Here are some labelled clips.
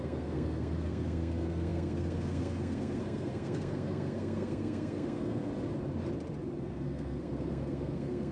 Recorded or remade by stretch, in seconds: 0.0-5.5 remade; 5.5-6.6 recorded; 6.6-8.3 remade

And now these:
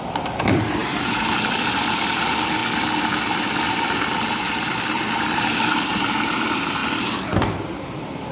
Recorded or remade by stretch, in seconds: 0.0-2.6 remade; 2.6-3.8 recorded; 3.8-6.8 remade; 6.8-7.8 recorded; 7.8-8.3 remade